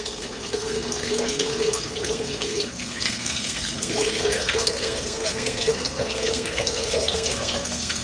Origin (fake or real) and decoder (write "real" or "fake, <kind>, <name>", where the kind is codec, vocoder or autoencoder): fake, codec, SNAC